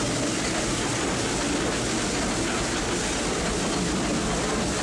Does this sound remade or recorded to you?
recorded